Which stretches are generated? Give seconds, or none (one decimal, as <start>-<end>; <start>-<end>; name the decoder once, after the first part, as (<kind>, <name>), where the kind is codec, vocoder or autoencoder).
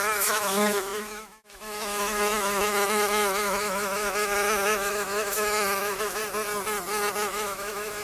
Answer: 0.0-6.2 (autoencoder, DAC-VAE); 7.3-8.0